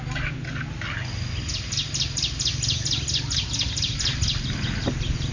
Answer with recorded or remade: recorded